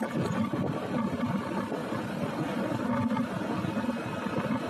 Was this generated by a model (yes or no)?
no